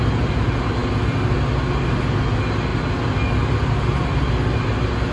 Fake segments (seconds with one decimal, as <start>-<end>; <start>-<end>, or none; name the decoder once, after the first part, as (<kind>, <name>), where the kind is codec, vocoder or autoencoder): none